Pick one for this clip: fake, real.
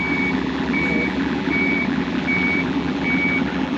fake